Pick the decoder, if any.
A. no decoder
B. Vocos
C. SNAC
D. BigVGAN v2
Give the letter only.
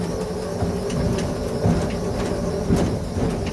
A